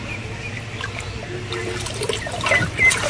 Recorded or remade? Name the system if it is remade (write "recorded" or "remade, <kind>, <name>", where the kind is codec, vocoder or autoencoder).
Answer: recorded